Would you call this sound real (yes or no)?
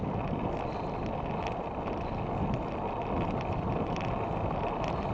yes